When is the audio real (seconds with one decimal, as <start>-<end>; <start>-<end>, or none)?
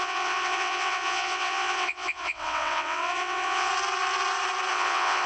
3.7-4.7